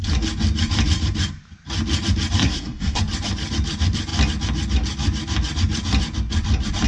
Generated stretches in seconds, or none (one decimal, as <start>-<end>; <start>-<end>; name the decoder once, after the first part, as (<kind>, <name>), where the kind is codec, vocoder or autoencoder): 2.4-3.0 (codec, SNAC)